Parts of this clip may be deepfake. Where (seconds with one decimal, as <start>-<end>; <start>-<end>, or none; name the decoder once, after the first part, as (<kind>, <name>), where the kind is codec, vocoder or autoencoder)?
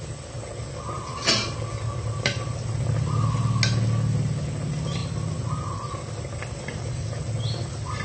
none